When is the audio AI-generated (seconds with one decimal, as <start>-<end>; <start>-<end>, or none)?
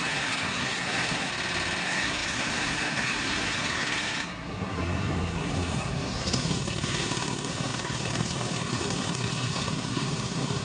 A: 0.0-1.3; 1.8-10.6